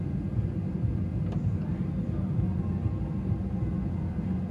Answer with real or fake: real